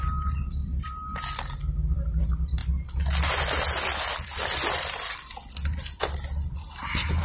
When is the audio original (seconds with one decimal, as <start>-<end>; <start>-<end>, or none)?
0.0-7.2